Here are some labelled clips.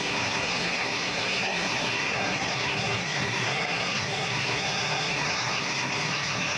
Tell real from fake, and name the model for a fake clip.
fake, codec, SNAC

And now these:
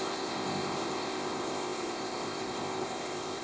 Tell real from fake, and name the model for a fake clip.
fake, codec, ZipCodec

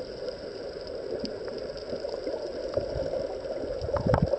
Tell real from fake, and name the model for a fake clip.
real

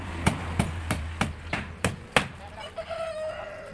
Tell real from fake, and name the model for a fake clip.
real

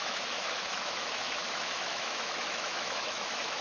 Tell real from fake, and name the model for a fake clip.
fake, autoencoder, DAC-VAE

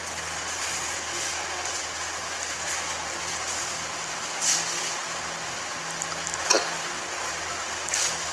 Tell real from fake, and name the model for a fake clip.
real